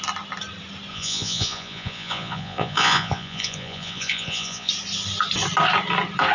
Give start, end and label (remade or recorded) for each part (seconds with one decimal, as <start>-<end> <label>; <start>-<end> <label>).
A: 0.0-0.9 recorded; 0.9-4.7 remade; 4.7-6.3 recorded